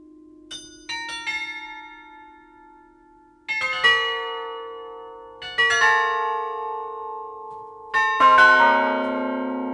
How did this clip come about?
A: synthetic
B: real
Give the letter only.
B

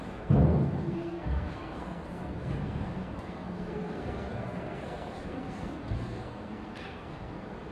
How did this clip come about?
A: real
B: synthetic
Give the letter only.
B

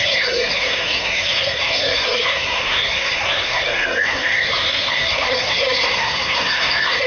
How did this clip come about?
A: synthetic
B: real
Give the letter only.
A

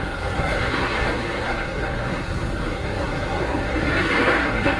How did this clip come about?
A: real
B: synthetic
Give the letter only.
B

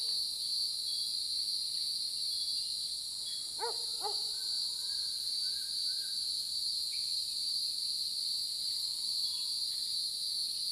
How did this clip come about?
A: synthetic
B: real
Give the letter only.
B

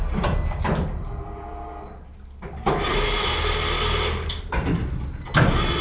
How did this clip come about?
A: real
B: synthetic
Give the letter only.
A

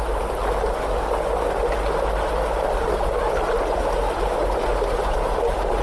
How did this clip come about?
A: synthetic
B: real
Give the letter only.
B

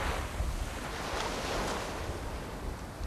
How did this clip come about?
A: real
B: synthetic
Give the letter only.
A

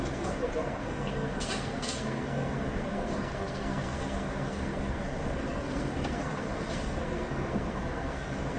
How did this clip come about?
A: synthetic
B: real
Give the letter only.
A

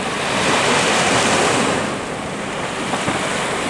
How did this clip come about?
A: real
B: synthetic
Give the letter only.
A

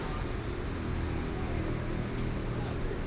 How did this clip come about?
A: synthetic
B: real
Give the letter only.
B